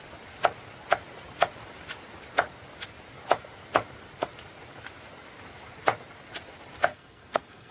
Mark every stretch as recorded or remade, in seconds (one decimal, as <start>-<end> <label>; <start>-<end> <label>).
0.0-6.9 recorded; 6.9-7.7 remade